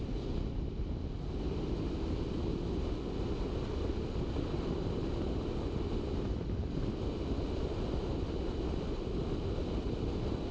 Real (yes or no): yes